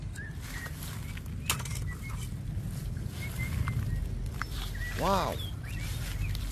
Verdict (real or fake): real